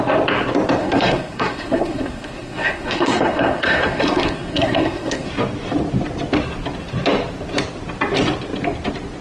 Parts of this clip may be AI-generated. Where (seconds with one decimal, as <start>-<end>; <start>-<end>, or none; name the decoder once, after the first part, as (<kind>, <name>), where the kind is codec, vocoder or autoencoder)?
0.8-5.3 (codec, SNAC)